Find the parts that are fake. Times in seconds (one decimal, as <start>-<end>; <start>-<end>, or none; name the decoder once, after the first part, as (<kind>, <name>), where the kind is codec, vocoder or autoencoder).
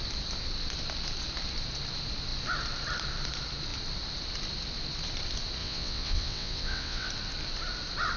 5.6-7.1 (vocoder, WaveNeXt)